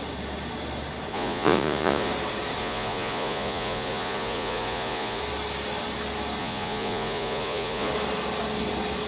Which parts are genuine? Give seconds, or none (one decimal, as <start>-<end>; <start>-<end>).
0.0-1.1; 2.1-2.6; 5.2-6.4; 7.9-9.1